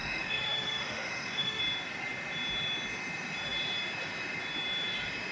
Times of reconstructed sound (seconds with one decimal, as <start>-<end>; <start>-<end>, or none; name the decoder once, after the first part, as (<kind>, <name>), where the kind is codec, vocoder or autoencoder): 0.0-1.6 (autoencoder, DAC-VAE)